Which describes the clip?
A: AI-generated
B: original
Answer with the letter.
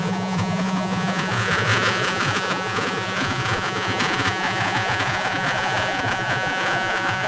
A